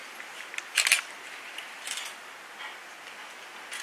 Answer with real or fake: real